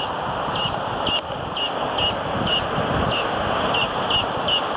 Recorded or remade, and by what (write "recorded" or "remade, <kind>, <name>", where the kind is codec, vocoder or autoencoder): recorded